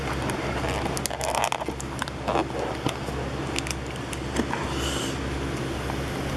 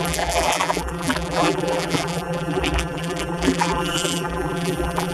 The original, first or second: first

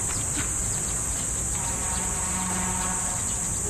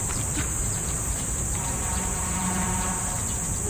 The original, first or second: first